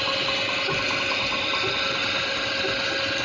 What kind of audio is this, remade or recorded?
recorded